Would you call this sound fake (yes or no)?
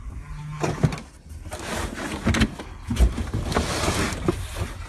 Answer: no